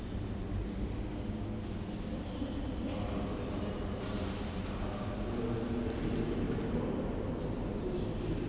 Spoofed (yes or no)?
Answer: no